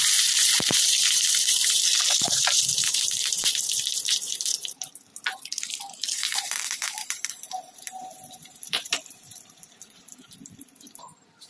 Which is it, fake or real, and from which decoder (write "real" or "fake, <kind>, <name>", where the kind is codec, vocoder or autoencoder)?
fake, vocoder, BigVGAN v2